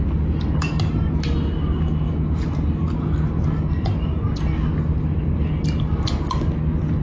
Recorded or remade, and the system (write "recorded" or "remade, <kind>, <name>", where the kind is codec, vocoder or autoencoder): recorded